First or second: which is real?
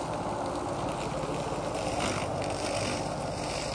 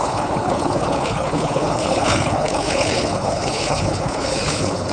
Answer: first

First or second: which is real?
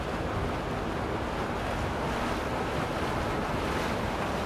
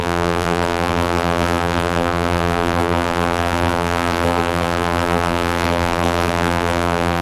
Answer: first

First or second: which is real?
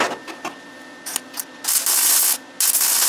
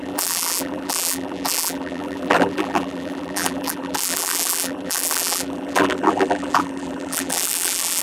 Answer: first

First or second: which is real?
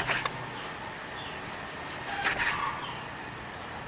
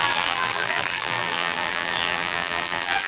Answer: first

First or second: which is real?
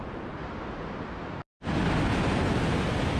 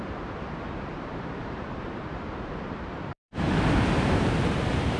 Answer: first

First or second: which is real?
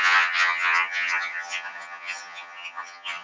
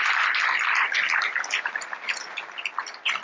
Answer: second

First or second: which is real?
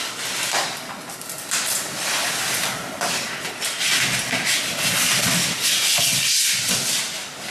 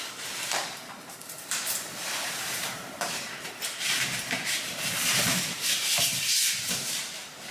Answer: first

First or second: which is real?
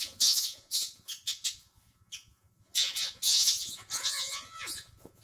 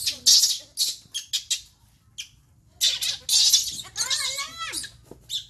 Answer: second